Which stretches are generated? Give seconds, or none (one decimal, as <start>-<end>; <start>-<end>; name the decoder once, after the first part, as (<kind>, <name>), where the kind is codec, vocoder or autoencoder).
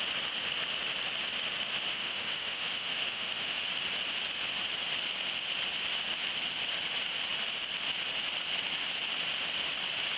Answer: 1.9-3.7 (autoencoder, DAC-VAE)